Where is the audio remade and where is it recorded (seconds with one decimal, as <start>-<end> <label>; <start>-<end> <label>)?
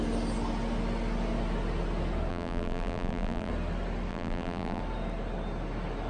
0.0-2.3 recorded; 2.3-3.5 remade; 3.5-4.1 recorded; 4.1-4.8 remade; 4.8-6.1 recorded